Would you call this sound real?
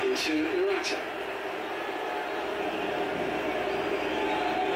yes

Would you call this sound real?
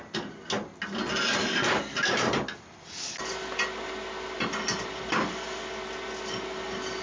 yes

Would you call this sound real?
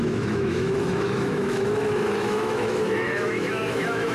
no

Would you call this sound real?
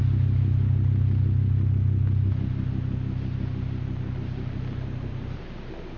yes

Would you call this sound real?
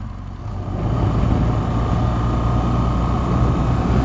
yes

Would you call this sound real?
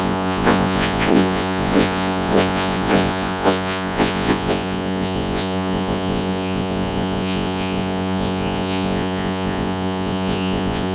no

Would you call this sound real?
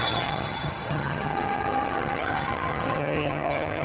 no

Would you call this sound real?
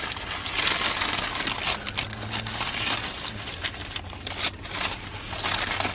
yes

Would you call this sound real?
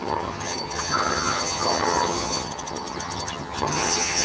no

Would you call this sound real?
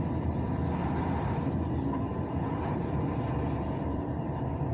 no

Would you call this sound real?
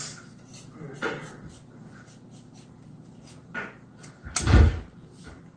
yes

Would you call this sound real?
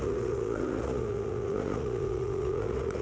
no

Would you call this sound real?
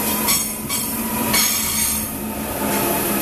yes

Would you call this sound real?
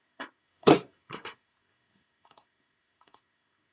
no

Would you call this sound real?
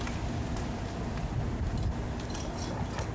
yes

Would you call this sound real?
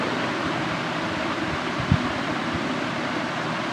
yes